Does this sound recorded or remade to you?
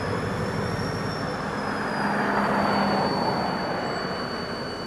recorded